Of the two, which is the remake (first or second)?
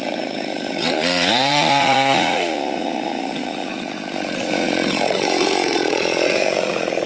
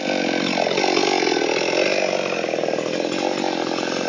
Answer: first